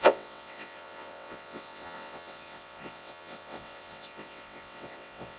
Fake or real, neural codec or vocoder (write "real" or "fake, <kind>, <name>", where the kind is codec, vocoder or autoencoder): fake, vocoder, WaveNeXt